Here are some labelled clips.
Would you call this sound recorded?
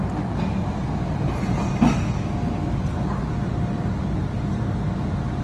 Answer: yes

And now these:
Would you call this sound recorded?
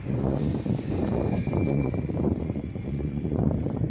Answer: no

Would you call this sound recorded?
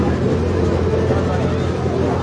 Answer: yes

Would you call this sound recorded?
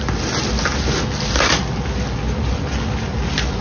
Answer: yes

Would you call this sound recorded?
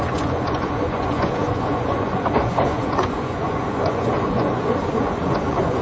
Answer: no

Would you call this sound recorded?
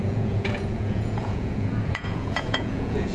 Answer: no